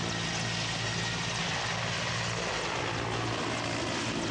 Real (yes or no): yes